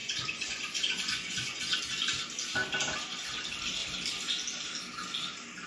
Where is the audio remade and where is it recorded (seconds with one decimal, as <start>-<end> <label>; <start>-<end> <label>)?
0.0-1.6 remade; 1.6-5.7 recorded